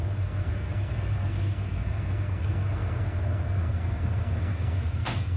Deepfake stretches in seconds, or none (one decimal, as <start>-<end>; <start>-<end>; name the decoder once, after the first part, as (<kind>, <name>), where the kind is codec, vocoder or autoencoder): 0.0-5.4 (codec, SNAC)